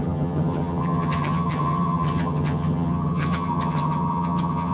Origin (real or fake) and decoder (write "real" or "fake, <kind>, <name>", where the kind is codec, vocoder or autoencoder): fake, vocoder, HiFi-GAN